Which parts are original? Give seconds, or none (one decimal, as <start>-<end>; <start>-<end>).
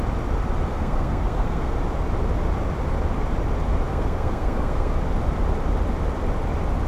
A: 0.0-0.7; 1.7-3.9; 4.9-6.9